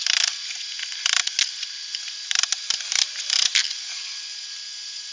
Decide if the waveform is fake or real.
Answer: real